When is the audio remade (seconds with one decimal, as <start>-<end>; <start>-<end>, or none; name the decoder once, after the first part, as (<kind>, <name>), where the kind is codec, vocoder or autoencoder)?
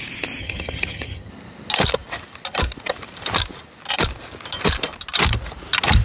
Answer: 0.4-1.3 (vocoder, HiFi-GAN)